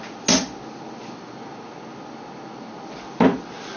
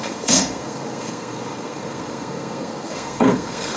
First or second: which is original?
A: first